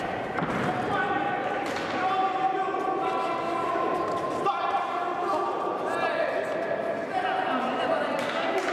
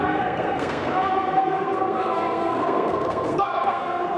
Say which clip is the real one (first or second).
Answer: first